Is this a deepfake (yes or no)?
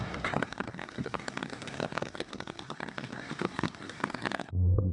yes